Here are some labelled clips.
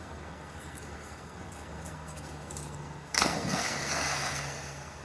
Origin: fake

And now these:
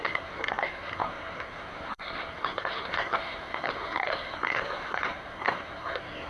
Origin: fake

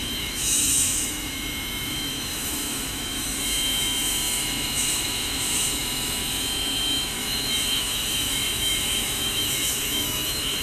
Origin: fake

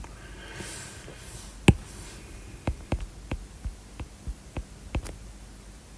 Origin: real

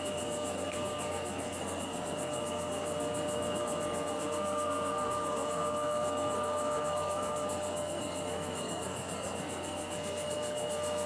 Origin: fake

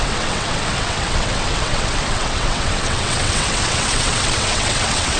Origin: fake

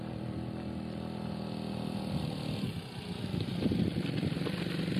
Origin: real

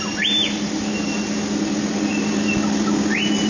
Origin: real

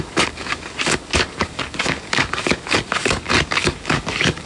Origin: fake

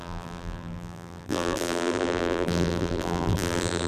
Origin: fake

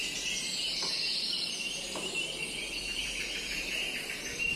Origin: fake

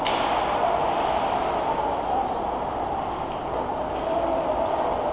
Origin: real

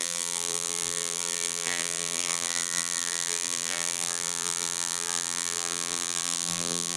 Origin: fake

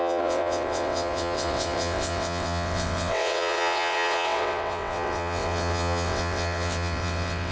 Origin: fake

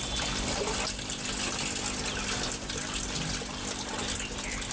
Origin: real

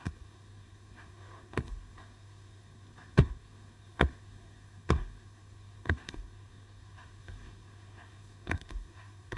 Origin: fake